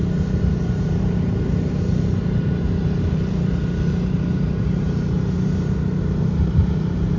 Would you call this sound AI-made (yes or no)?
yes